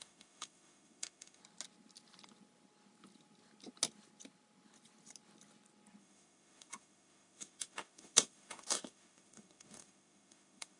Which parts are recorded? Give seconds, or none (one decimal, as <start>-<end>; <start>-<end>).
1.4-6.0